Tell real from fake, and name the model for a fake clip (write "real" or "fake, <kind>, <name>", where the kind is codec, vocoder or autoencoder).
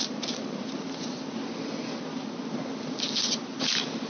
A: real